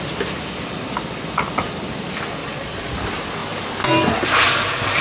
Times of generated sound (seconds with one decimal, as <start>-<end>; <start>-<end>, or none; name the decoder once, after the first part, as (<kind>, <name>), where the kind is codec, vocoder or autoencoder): 2.4-2.9 (vocoder, Vocos)